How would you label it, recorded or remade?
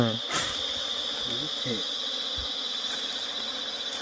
recorded